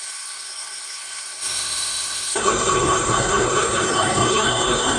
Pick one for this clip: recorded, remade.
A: remade